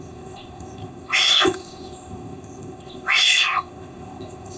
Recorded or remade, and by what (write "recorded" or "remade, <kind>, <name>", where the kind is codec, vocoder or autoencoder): remade, codec, ZipCodec